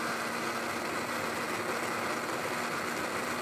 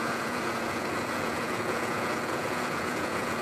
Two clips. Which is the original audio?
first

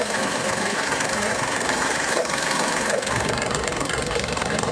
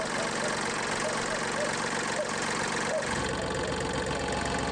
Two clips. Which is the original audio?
second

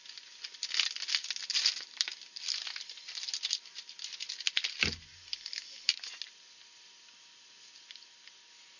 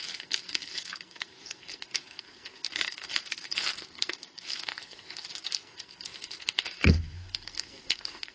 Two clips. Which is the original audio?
first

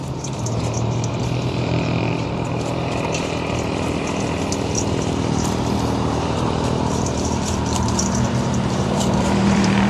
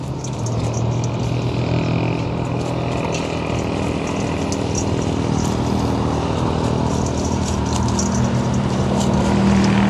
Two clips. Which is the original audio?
second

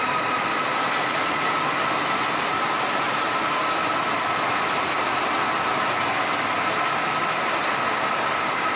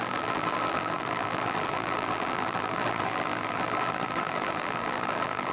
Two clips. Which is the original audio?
first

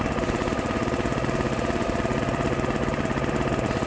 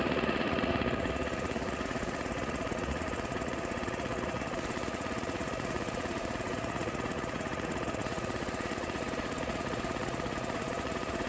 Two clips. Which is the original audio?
first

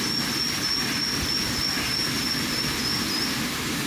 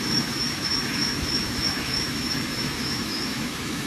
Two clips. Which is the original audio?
first